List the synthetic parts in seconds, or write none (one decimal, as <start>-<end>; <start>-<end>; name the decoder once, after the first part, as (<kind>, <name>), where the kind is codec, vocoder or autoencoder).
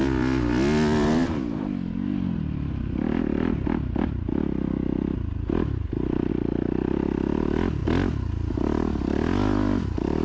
none